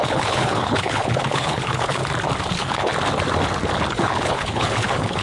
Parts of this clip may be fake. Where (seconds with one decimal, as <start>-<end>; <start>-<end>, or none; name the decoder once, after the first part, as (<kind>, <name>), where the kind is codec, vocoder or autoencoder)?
0.0-2.0 (codec, HILCodec); 2.5-2.9; 3.9-5.2